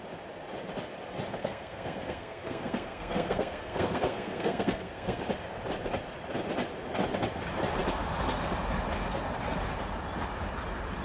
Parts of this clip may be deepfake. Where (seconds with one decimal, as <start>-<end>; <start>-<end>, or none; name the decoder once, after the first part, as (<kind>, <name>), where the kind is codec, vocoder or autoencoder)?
1.4-5.2 (codec, SNAC)